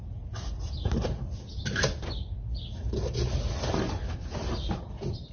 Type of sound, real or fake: real